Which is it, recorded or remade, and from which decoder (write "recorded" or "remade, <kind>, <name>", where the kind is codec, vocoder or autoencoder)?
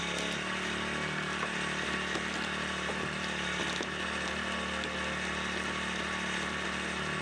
recorded